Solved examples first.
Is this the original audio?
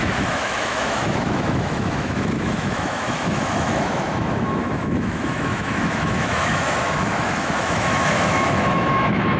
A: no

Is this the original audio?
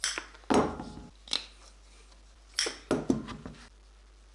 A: yes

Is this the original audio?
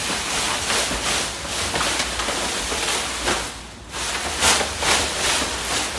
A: yes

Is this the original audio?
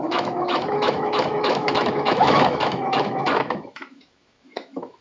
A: no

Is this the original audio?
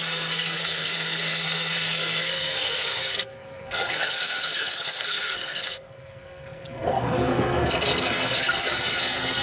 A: no